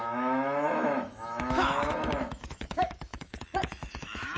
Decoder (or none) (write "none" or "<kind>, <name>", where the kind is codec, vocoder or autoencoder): autoencoder, DAC-VAE